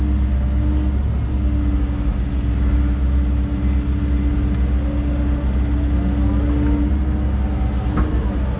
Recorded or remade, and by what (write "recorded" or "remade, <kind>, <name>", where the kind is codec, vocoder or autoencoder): recorded